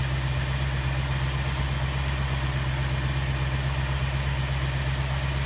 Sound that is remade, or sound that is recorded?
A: recorded